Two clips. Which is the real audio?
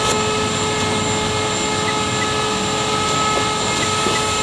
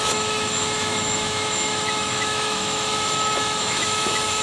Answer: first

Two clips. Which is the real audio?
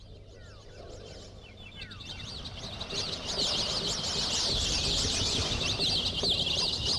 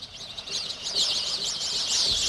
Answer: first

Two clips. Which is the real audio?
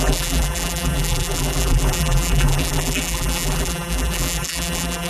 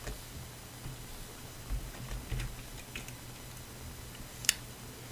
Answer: second